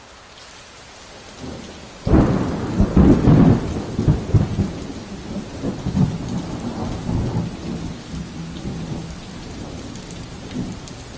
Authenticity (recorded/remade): recorded